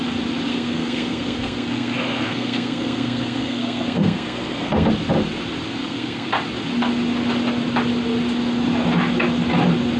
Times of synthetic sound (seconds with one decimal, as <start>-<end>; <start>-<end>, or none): 0.5-4.9; 5.8-6.3